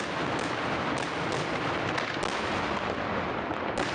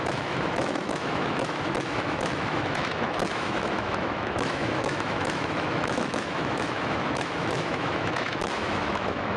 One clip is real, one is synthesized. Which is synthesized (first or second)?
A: second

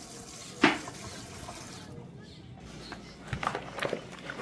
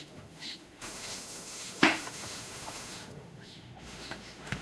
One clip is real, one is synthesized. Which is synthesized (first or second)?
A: second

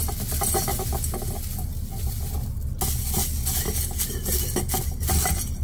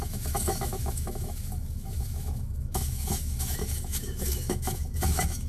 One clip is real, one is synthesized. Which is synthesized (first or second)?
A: second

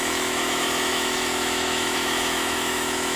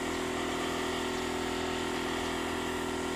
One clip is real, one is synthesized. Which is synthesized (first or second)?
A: first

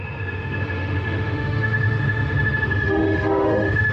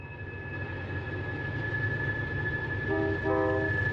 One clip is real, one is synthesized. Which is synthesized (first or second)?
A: first